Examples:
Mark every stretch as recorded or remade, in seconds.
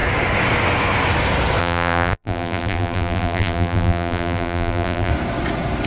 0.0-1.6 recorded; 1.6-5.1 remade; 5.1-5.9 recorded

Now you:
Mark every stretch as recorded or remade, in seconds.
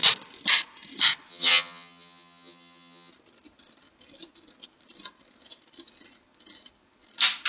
0.0-1.3 recorded; 1.3-3.1 remade; 3.1-7.5 recorded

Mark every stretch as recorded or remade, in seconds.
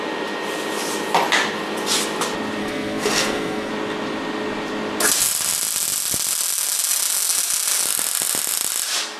0.0-2.6 recorded; 2.6-3.7 remade; 3.7-9.2 recorded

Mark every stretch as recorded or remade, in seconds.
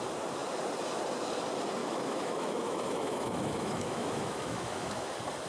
0.0-1.8 recorded; 1.8-5.1 remade; 5.1-5.5 recorded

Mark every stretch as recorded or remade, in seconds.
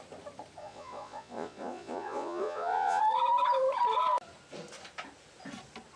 0.0-0.6 recorded; 0.6-3.0 remade; 3.0-6.0 recorded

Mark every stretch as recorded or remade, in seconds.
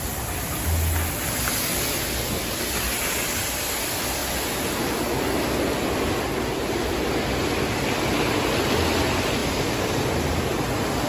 0.0-11.1 recorded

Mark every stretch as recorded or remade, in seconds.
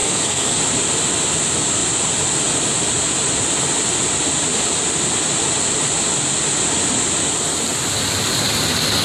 0.0-0.6 remade; 0.6-9.0 recorded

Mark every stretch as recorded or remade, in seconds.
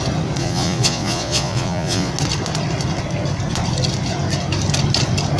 0.0-0.4 recorded; 0.4-2.1 remade; 2.1-5.4 recorded